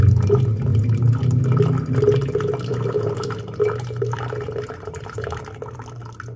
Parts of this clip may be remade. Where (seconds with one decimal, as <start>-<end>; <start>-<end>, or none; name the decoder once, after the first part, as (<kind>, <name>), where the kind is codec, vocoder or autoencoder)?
0.7-1.4 (vocoder, BigVGAN v2); 2.7-5.4